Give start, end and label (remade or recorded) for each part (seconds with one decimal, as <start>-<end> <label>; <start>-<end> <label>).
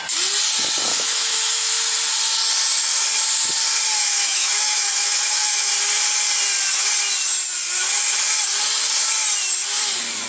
0.0-0.9 recorded; 0.9-1.7 remade; 1.7-4.0 recorded; 4.0-5.7 remade; 5.7-10.3 recorded